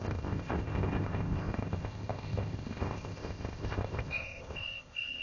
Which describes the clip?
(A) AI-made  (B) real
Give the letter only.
A